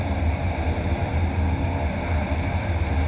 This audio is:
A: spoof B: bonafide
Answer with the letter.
A